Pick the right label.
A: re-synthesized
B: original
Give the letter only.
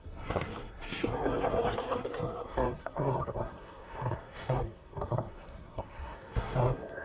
A